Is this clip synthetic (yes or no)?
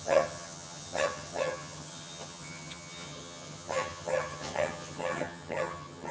yes